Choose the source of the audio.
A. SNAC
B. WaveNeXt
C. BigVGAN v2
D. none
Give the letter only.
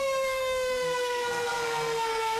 A